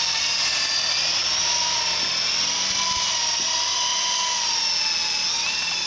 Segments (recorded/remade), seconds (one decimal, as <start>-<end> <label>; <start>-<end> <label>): 0.0-5.9 recorded